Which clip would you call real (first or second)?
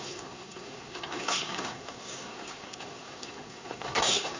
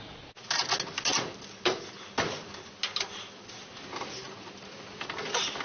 second